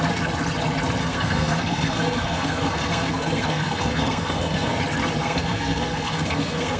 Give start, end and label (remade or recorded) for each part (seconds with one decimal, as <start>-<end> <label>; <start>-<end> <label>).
0.0-1.0 recorded; 1.0-4.8 remade; 4.8-5.2 recorded; 5.2-6.8 remade